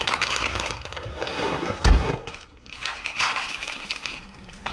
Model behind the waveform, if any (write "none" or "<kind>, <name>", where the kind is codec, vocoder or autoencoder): codec, SNAC